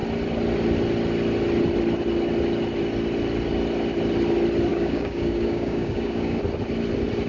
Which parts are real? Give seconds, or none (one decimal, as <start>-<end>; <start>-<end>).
0.0-4.7; 6.4-7.3